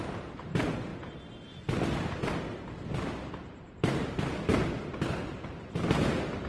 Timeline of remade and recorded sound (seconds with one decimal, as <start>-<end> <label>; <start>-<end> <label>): 0.0-0.9 remade; 0.9-3.3 recorded; 3.3-4.5 remade; 4.5-5.1 recorded; 5.1-6.5 remade

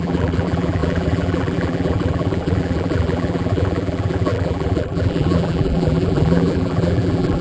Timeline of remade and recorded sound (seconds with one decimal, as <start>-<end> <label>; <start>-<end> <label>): 0.0-7.4 remade

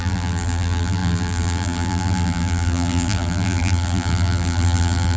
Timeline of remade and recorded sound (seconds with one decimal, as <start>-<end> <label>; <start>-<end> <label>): 0.0-5.2 remade

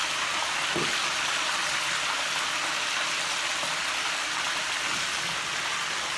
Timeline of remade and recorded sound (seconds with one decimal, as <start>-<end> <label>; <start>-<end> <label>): 0.0-6.2 recorded